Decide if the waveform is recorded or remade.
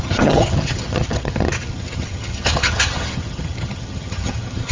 remade